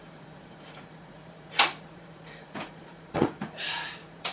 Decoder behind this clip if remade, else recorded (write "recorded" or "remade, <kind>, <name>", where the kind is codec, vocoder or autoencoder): remade, vocoder, Vocos